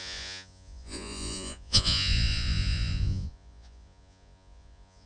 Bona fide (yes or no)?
no